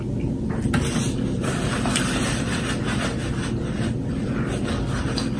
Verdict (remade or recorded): recorded